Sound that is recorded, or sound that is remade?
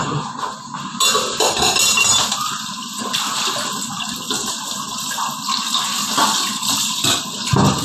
recorded